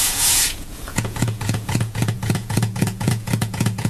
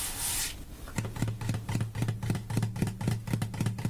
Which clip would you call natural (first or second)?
second